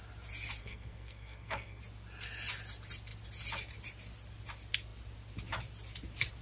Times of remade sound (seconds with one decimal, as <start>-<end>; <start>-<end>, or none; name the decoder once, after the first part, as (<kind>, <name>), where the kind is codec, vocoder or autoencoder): 0.6-1.8 (codec, SNAC)